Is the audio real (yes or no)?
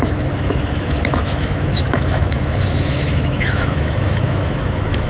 no